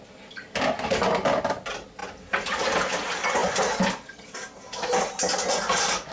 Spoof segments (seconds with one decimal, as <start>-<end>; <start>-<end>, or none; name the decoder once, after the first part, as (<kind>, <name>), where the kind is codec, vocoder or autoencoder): none